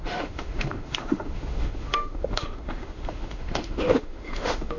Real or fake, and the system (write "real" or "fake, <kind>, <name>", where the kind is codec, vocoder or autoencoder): fake, autoencoder, DAC-VAE